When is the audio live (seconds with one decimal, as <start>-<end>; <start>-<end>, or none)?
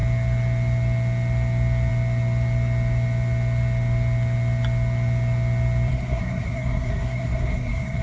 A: 0.0-5.9